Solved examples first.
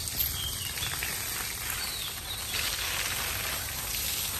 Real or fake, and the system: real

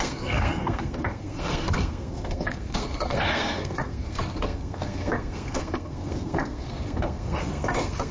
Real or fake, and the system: fake, codec, SNAC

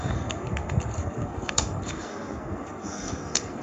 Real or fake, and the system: fake, codec, SNAC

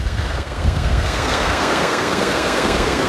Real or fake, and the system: fake, codec, SNAC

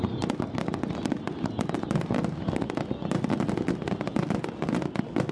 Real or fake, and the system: real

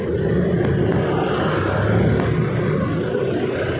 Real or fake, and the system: real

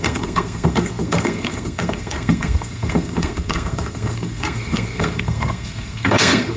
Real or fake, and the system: fake, codec, SNAC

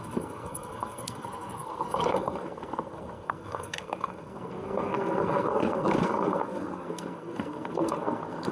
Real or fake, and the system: fake, codec, SNAC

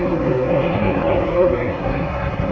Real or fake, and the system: fake, codec, SNAC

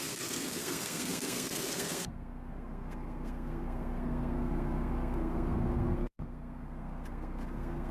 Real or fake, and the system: fake, codec, SNAC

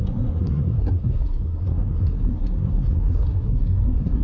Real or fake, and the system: fake, codec, SNAC